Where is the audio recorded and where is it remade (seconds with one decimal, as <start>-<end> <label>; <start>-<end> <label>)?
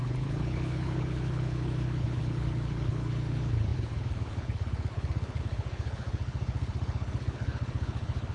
0.0-8.3 remade